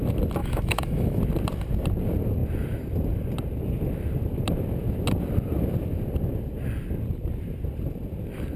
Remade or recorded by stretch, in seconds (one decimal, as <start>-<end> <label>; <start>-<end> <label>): 0.0-0.4 recorded; 0.4-1.2 remade; 1.2-8.6 recorded